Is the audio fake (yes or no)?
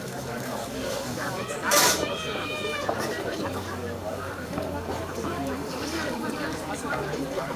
yes